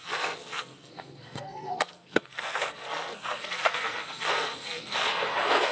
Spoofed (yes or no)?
yes